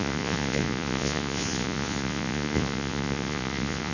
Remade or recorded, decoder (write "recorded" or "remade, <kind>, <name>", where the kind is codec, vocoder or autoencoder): remade, vocoder, Vocos